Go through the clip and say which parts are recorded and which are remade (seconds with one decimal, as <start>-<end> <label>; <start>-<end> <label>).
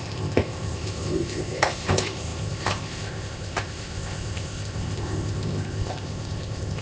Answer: 0.0-6.8 remade